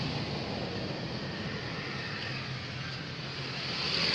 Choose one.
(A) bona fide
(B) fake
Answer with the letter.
A